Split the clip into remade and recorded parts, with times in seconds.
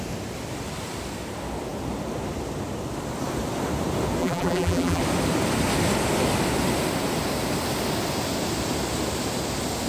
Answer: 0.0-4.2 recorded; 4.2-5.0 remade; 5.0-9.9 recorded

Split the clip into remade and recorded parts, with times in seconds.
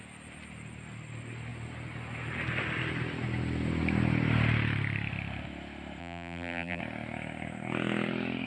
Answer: 0.0-6.0 recorded; 6.0-6.8 remade; 6.8-8.5 recorded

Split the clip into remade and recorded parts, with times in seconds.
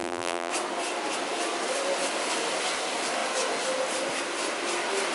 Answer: 0.0-0.5 remade; 0.5-5.1 recorded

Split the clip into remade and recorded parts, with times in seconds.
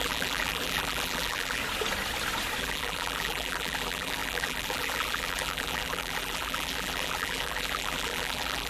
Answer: 0.0-1.6 remade; 1.6-2.6 recorded; 2.6-8.7 remade